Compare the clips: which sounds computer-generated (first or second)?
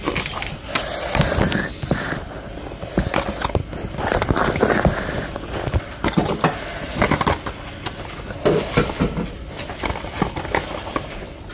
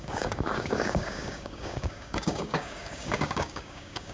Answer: second